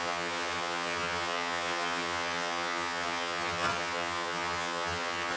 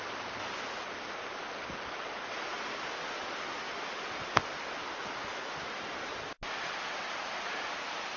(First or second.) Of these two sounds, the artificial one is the first